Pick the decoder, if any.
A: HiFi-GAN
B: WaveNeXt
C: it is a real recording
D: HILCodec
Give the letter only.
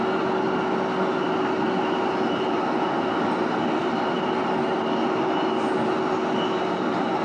C